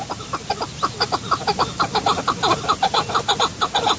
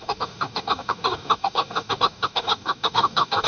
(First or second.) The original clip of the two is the first